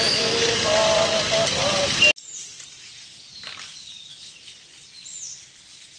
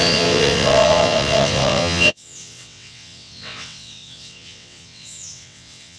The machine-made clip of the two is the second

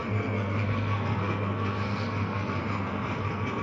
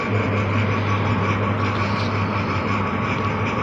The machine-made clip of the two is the first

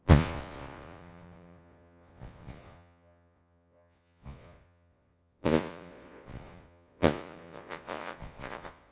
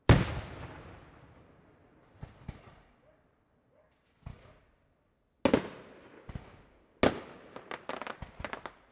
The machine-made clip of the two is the first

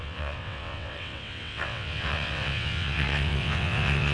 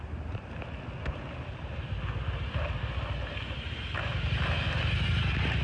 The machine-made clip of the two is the first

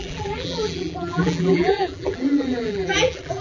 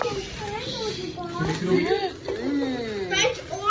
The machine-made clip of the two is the first